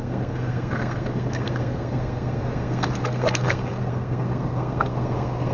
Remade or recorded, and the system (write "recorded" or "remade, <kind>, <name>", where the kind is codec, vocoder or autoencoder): remade, codec, SNAC